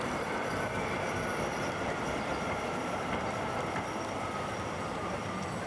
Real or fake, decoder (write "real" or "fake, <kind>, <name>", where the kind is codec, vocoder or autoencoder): fake, vocoder, BigVGAN v2